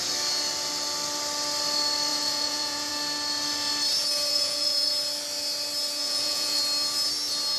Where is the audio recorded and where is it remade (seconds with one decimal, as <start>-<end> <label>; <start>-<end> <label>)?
0.0-2.1 recorded; 2.1-2.9 remade; 2.9-4.3 recorded; 4.3-4.9 remade; 4.9-6.0 recorded; 6.0-6.6 remade; 6.6-7.6 recorded

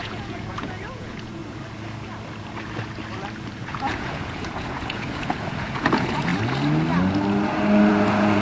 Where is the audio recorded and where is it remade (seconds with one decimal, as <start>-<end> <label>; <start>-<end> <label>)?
0.0-1.4 remade; 1.4-3.6 recorded; 3.6-6.3 remade; 6.3-7.9 recorded; 7.9-8.4 remade

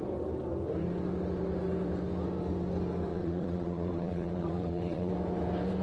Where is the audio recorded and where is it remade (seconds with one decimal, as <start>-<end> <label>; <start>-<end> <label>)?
0.0-3.1 recorded; 3.1-5.1 remade; 5.1-5.8 recorded

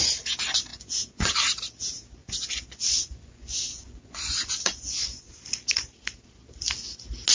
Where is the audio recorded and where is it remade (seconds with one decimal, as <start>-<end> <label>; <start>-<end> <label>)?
0.0-0.7 recorded; 0.7-1.3 remade; 1.3-2.2 recorded; 2.2-5.3 remade; 5.3-7.3 recorded

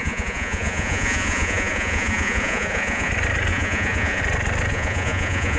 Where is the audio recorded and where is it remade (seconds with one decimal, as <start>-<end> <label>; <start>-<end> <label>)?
0.0-3.1 remade; 3.1-3.5 recorded; 3.5-4.2 remade; 4.2-4.7 recorded; 4.7-5.6 remade

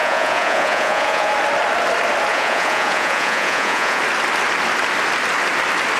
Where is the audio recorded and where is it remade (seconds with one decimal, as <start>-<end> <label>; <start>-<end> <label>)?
0.0-1.3 remade; 1.3-2.3 recorded; 2.3-4.0 remade; 4.0-6.0 recorded

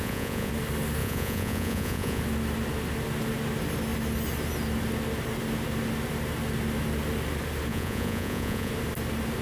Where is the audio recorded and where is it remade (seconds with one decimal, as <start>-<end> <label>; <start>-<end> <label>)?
0.0-0.5 remade; 0.5-1.0 recorded; 1.0-2.2 remade; 2.2-7.7 recorded; 7.7-8.7 remade; 8.7-9.4 recorded

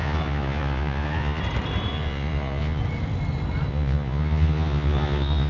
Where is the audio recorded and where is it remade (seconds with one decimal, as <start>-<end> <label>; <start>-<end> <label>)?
0.0-1.4 remade; 1.4-1.9 recorded; 1.9-2.8 remade; 2.8-3.7 recorded; 3.7-5.5 remade